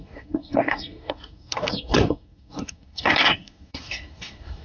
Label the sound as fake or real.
fake